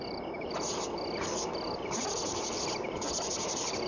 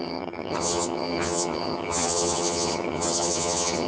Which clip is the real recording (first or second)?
first